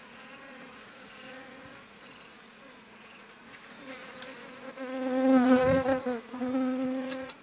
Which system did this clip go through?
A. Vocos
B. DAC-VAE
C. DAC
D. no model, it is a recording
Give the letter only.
A